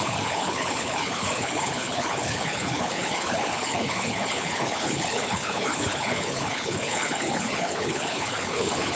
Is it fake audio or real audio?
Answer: fake